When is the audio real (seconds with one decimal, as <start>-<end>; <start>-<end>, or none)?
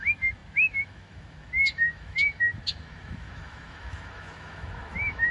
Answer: none